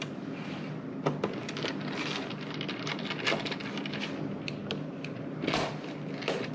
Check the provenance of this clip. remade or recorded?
recorded